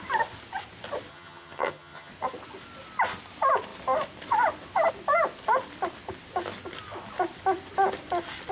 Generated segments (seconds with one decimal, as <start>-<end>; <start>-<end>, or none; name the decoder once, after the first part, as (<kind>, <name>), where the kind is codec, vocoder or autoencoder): 1.1-2.1 (vocoder, HiFi-GAN)